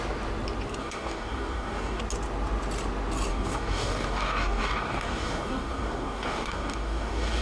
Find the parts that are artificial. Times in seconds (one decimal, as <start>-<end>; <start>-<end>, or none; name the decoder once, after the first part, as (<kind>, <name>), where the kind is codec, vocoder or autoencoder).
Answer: 0.8-2.0 (codec, DAC); 3.3-7.4